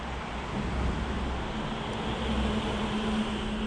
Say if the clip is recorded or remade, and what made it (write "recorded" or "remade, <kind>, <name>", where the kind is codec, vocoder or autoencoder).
recorded